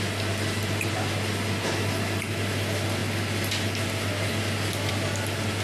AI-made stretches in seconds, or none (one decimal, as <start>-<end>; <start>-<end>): none

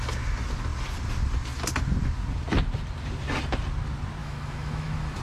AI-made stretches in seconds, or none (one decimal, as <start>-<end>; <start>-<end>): 4.2-5.2

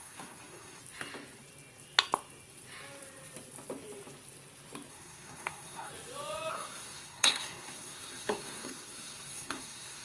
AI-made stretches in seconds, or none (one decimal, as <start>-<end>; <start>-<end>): 0.0-0.8; 4.9-5.9; 6.5-10.0